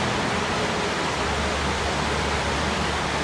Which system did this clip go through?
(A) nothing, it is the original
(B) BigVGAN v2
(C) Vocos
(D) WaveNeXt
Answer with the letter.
B